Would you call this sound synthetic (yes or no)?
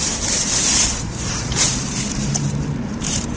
yes